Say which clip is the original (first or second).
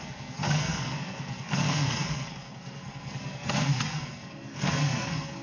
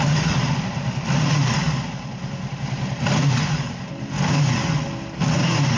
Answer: second